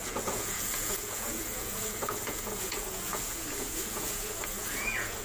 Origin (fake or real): fake